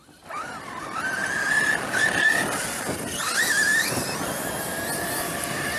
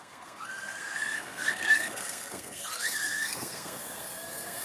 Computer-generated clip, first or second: second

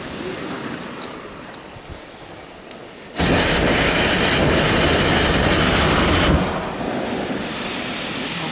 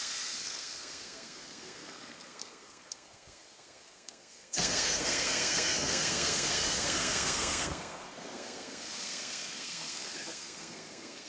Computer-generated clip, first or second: second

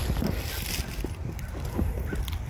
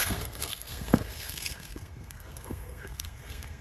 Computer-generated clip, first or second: second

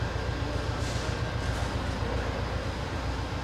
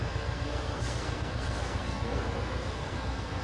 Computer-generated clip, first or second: second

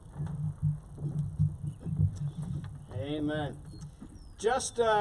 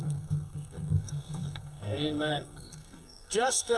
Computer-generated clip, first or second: second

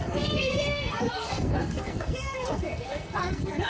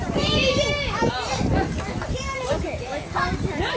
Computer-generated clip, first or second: first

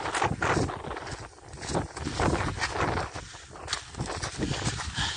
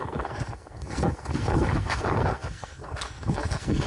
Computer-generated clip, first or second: second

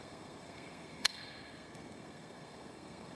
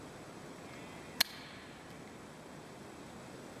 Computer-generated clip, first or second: first